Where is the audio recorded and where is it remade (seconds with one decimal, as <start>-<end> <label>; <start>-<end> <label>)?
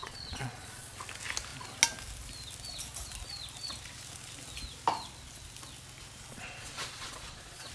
0.0-1.0 remade; 1.0-6.3 recorded; 6.3-7.7 remade